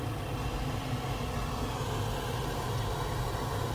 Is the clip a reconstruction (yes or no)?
no